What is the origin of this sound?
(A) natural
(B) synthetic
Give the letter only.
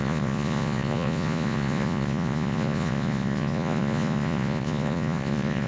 B